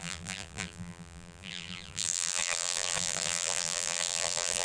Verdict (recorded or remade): remade